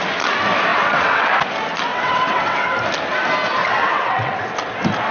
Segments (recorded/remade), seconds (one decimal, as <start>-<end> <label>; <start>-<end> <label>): 0.0-0.7 recorded; 0.7-1.3 remade; 1.3-1.9 recorded; 1.9-2.7 remade; 2.7-3.6 recorded; 3.6-4.4 remade; 4.4-5.1 recorded